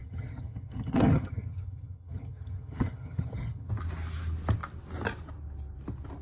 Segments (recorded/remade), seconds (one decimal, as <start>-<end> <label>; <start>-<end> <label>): 0.0-3.7 remade; 3.7-6.2 recorded